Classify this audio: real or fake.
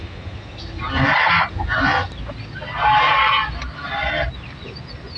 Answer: real